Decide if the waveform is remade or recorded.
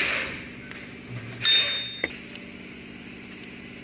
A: recorded